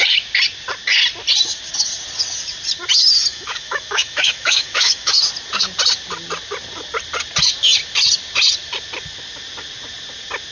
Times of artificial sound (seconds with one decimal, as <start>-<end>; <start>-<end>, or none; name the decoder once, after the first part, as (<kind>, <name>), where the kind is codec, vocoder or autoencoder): 3.3-5.2 (autoencoder, DAC-VAE)